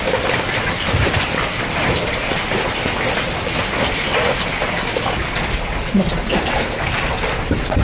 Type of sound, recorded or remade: recorded